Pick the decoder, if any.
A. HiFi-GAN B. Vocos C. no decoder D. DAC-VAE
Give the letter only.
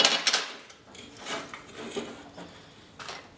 C